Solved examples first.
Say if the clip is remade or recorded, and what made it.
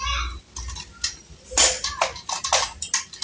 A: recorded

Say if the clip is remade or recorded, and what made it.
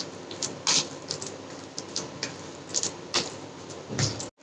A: recorded